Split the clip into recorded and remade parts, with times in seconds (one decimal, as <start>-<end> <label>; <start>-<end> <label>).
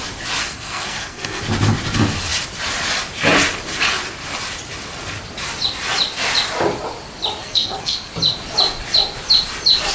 0.0-0.4 recorded; 0.4-1.4 remade; 1.4-7.4 recorded; 7.4-8.1 remade; 8.1-9.9 recorded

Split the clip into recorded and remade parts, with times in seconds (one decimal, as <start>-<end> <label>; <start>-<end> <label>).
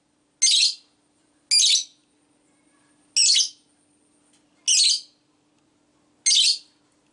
0.0-7.1 recorded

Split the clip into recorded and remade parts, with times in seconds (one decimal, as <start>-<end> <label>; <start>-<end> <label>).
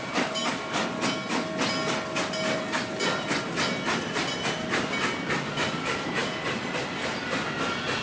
0.0-8.0 recorded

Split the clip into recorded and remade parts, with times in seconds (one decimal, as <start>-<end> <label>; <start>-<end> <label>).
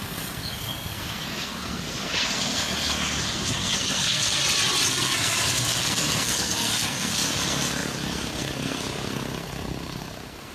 0.0-4.4 remade; 4.4-4.9 recorded; 4.9-10.5 remade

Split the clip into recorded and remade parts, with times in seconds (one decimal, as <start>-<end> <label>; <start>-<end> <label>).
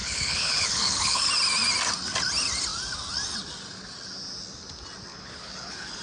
0.0-1.3 remade; 1.3-5.1 recorded; 5.1-6.0 remade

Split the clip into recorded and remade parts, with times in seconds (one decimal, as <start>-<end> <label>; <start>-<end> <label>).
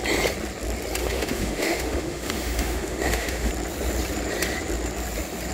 0.0-1.0 recorded; 1.0-3.5 remade; 3.5-5.5 recorded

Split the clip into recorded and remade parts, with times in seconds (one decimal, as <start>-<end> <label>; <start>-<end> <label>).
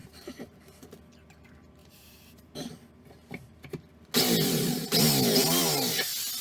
0.0-0.6 remade; 0.6-1.8 recorded; 1.8-3.6 remade; 3.6-6.4 recorded